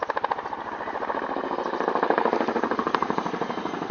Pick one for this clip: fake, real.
real